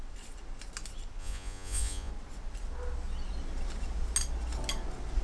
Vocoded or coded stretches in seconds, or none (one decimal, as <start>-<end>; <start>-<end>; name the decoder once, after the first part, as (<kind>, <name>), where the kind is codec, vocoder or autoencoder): 1.2-2.1 (vocoder, Vocos)